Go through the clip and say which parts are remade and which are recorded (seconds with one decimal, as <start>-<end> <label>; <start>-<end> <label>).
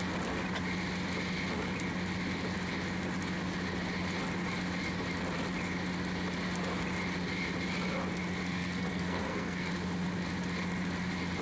0.0-8.4 recorded; 8.4-9.7 remade; 9.7-11.4 recorded